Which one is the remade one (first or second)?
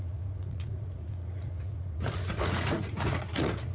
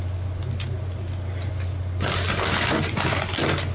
first